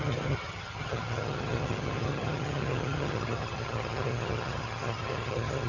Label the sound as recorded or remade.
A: remade